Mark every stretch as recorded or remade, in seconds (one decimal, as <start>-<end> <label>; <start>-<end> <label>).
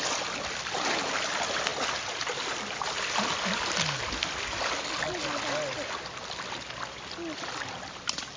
0.0-8.4 recorded